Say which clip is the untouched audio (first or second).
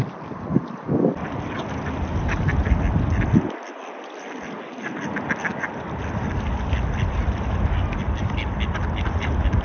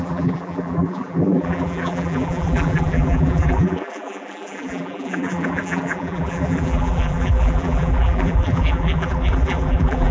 first